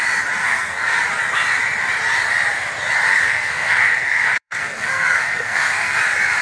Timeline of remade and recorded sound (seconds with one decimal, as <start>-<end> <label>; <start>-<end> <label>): 0.0-0.4 recorded; 0.4-1.0 remade; 1.0-3.1 recorded; 3.1-6.0 remade; 6.0-6.4 recorded